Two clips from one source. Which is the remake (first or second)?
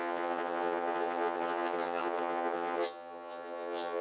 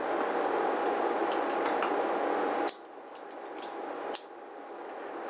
first